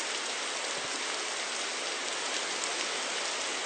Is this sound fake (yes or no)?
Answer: no